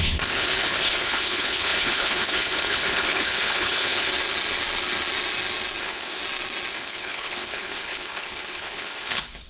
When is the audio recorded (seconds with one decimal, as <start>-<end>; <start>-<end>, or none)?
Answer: 4.1-5.8; 6.2-6.7